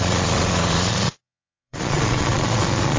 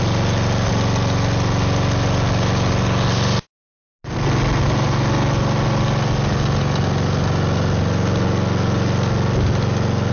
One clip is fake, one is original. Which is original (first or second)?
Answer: second